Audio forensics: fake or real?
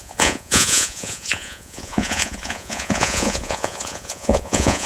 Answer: fake